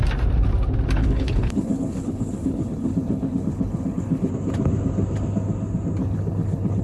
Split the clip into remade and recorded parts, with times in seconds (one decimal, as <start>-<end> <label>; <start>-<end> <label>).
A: 0.0-1.0 recorded; 1.0-4.3 remade; 4.3-6.0 recorded; 6.0-6.8 remade